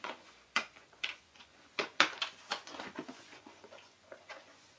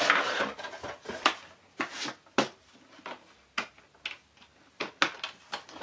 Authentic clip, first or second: second